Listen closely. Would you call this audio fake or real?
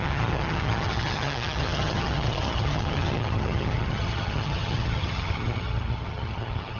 fake